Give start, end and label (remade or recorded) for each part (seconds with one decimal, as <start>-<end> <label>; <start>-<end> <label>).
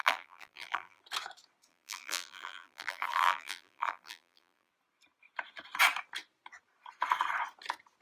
0.0-1.0 remade; 1.0-1.7 recorded; 1.7-4.7 remade; 4.7-8.0 recorded